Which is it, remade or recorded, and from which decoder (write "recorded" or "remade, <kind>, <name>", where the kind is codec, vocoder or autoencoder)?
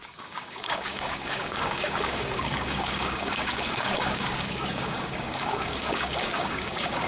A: remade, codec, DAC